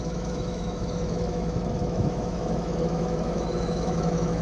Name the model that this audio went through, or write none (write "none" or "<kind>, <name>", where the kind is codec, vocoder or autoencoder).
autoencoder, DAC-VAE